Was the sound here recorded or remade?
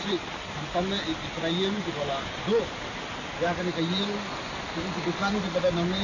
recorded